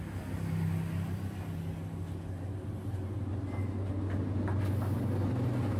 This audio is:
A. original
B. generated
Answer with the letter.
A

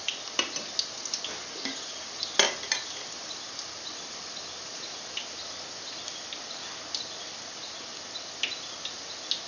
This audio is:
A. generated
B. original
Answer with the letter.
B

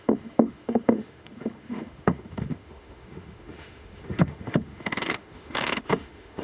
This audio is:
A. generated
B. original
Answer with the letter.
A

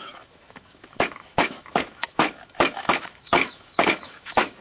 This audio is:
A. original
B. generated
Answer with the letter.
B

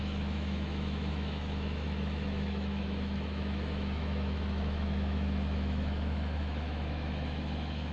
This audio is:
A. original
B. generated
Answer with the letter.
B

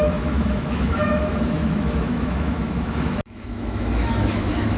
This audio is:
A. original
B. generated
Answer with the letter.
B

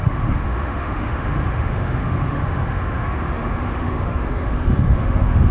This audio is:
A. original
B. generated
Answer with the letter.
B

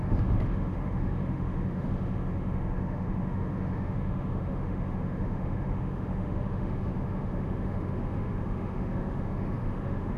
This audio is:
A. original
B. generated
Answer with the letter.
B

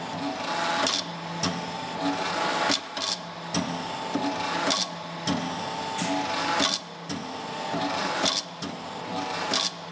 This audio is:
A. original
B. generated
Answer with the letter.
A